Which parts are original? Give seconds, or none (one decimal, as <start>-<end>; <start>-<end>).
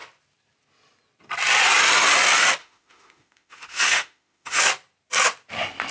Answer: 0.0-2.6; 4.6-5.9